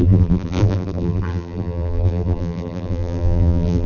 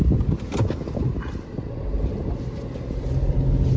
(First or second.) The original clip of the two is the second